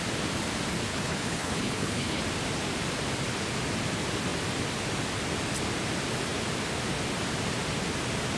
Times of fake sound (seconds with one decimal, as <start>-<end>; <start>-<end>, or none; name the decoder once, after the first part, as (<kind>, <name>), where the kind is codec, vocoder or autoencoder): 0.9-2.2 (codec, HILCodec)

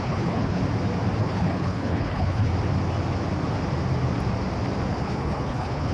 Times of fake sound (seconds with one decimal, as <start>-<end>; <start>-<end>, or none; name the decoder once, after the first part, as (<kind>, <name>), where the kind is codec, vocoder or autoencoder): 0.0-0.6 (codec, HILCodec); 1.2-2.5; 4.9-5.9

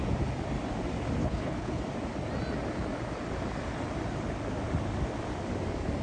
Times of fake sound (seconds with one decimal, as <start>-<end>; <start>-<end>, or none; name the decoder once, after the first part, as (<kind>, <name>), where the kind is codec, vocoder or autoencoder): 1.2-1.8 (codec, HILCodec)

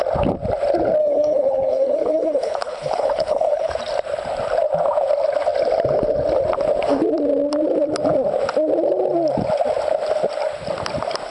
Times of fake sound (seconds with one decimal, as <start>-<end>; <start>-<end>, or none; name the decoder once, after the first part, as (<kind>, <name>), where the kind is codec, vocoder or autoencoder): 1.0-3.7 (codec, HILCodec)

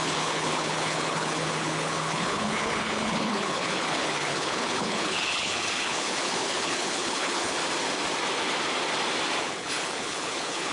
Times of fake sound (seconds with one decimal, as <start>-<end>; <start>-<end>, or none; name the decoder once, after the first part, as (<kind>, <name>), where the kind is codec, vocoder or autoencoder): 0.0-7.6 (codec, HILCodec); 9.4-10.7

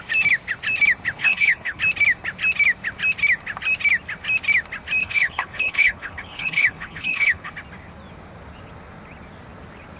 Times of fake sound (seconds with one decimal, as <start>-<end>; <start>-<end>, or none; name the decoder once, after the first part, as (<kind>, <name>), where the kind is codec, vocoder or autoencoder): 1.2-1.8 (codec, HILCodec); 5.0-7.5